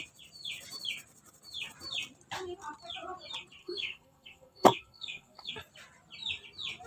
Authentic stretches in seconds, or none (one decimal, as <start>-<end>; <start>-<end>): 0.0-3.6; 5.5-6.9